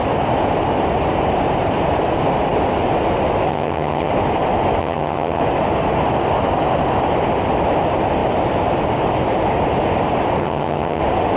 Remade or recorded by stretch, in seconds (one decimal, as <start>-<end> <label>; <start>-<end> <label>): 0.0-3.5 recorded; 3.5-4.1 remade; 4.1-4.8 recorded; 4.8-5.4 remade; 5.4-10.4 recorded; 10.4-11.0 remade; 11.0-11.4 recorded